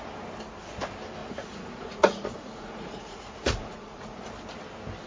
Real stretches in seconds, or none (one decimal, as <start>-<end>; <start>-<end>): 0.0-1.2; 4.3-5.1